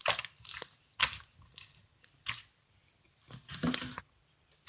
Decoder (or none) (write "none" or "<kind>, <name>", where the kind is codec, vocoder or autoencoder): none